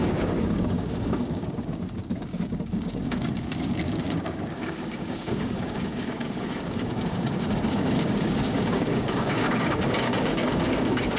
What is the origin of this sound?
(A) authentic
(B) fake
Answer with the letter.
B